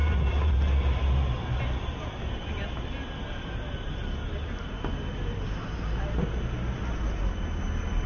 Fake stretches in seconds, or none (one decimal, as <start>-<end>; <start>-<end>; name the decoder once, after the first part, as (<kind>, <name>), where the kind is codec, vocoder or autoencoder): none